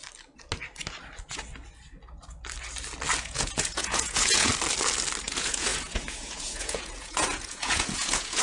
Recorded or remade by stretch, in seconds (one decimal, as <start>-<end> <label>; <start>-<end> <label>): 0.0-3.2 recorded; 3.2-4.5 remade; 4.5-5.2 recorded; 5.2-8.4 remade